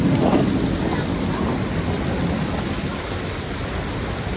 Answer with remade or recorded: recorded